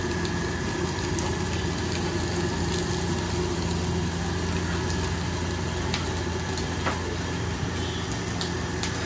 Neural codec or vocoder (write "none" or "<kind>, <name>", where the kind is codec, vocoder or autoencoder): none